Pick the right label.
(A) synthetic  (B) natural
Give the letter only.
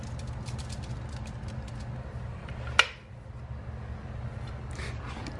B